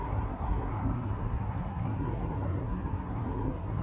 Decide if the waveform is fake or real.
fake